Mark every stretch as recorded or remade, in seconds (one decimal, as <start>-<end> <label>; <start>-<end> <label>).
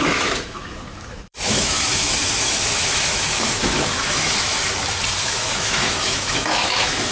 0.0-4.6 remade; 4.6-5.2 recorded; 5.2-7.1 remade